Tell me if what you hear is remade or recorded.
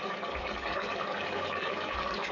remade